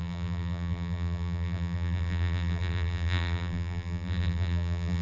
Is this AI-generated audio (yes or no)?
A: yes